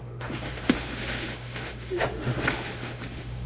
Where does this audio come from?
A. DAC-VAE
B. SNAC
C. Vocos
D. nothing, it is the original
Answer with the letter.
A